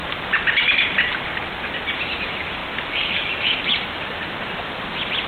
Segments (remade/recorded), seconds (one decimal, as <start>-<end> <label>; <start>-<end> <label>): 0.0-2.6 recorded; 2.6-4.7 remade; 4.7-5.3 recorded